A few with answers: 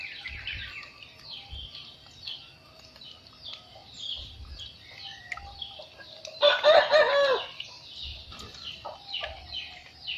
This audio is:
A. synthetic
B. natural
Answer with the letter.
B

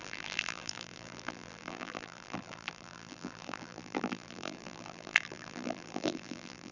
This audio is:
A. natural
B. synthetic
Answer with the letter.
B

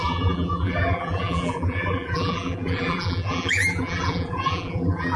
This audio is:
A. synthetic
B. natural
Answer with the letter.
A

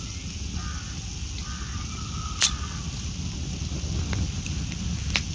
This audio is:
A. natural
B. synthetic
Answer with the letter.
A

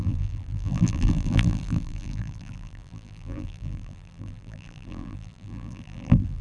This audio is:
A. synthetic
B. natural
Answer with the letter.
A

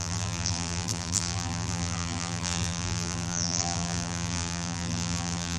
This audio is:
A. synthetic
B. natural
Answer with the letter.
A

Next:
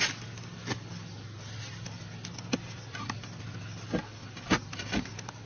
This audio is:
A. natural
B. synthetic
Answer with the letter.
A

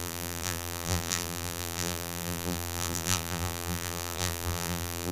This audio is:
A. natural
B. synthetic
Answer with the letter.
B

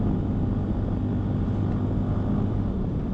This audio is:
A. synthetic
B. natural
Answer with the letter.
B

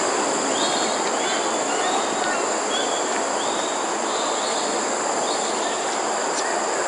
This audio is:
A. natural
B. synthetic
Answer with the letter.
A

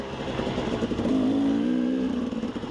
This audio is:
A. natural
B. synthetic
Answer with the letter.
B